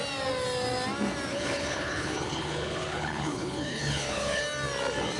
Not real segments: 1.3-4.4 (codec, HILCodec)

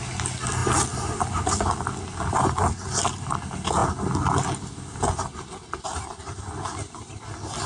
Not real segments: none

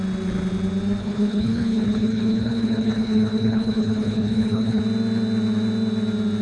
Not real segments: 1.0-4.8 (codec, HILCodec)

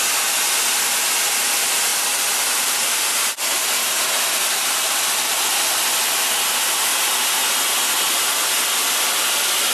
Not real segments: 1.9-5.4 (vocoder, BigVGAN v2)

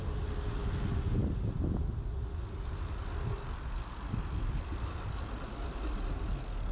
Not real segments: none

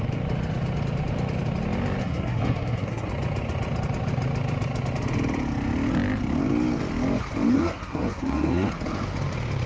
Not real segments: 2.0-3.1 (codec, SNAC); 7.5-8.7

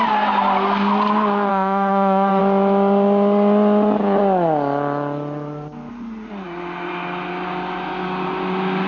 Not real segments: 1.5-2.4 (autoencoder, DAC-VAE)